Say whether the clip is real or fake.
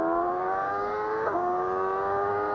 fake